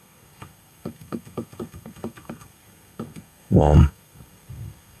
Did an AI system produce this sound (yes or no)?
yes